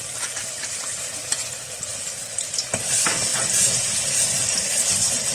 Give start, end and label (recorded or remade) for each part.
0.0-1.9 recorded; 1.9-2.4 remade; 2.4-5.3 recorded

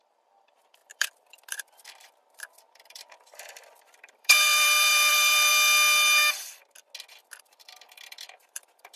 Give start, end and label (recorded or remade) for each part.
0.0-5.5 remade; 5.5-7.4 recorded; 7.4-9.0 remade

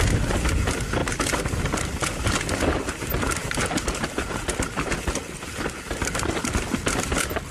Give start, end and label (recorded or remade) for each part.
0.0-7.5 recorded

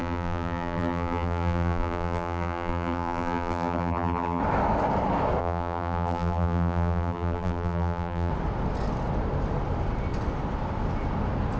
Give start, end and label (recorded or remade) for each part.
0.0-4.4 remade; 4.4-5.4 recorded; 5.4-8.3 remade; 8.3-11.6 recorded